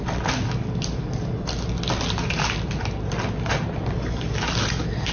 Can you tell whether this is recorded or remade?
recorded